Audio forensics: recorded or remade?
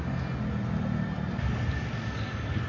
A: recorded